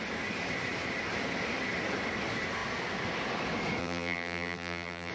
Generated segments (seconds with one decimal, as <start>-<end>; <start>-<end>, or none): 3.8-5.1